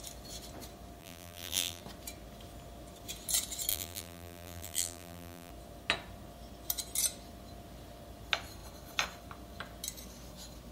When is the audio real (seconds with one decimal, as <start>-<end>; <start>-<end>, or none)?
0.0-1.0; 1.8-3.7; 5.5-10.7